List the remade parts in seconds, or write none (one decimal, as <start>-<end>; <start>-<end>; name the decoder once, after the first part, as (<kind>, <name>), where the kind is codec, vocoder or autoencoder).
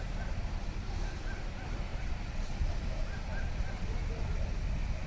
1.9-2.5 (vocoder, BigVGAN v2)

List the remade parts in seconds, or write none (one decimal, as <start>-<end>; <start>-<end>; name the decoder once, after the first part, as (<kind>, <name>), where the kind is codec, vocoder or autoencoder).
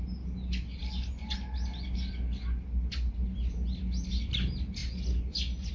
none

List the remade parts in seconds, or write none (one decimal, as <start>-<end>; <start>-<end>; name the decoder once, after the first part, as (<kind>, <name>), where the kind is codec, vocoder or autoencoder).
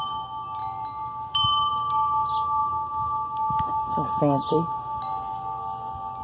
0.6-1.7 (vocoder, BigVGAN v2); 4.5-5.6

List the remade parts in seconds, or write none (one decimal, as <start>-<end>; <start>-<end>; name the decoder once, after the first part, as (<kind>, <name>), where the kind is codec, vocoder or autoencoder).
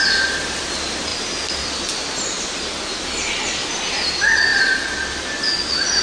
none